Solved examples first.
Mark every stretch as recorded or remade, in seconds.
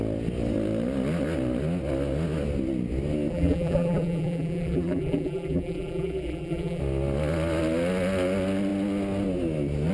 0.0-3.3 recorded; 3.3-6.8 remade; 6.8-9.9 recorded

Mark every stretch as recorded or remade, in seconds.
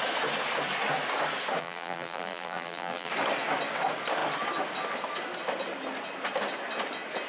0.0-1.6 recorded; 1.6-3.1 remade; 3.1-7.3 recorded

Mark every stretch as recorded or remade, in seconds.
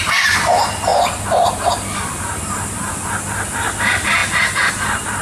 0.0-5.2 recorded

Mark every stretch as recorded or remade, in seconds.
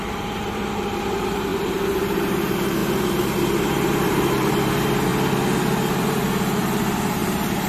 0.0-5.1 remade; 5.1-6.0 recorded; 6.0-7.7 remade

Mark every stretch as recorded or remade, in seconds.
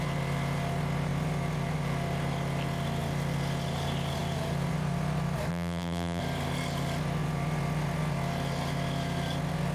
0.0-5.5 recorded; 5.5-6.2 remade; 6.2-9.7 recorded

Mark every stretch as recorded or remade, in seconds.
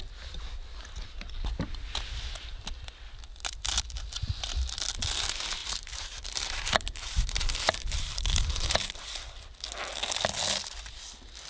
0.0-5.6 recorded; 5.6-8.7 remade; 8.7-11.5 recorded